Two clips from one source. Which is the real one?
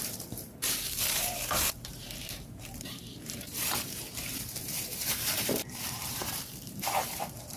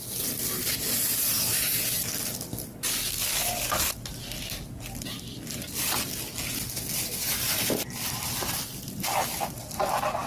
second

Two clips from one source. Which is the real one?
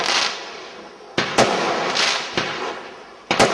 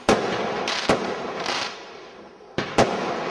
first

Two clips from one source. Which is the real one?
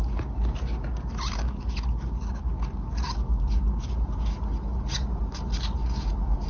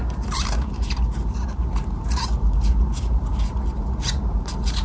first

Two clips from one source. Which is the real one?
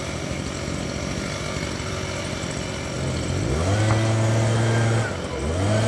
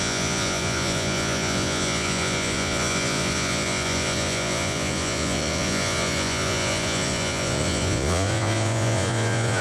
first